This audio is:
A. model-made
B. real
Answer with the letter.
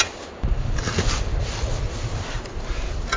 B